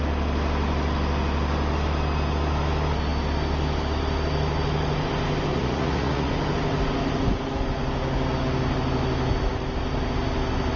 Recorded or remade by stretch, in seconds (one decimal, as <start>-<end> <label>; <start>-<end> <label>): 0.0-5.5 recorded; 5.5-6.3 remade; 6.3-10.8 recorded